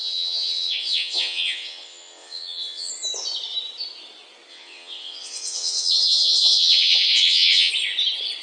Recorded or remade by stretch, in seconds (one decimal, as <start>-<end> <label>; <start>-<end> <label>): 0.0-2.9 remade; 2.9-4.5 recorded; 4.5-7.7 remade; 7.7-8.4 recorded